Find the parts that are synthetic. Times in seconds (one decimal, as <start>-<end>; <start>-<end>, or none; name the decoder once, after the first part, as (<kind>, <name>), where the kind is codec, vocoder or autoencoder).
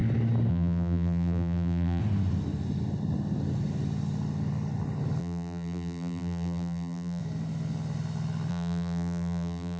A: 0.5-2.0 (vocoder, BigVGAN v2); 5.2-7.2; 8.5-9.8